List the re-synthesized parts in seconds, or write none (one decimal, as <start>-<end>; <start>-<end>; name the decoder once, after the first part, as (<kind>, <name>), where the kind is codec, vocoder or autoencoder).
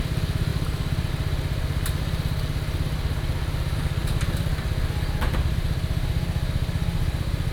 none